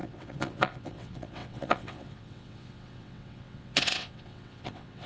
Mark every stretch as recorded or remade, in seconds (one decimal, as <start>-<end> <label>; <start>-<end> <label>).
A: 0.0-5.1 remade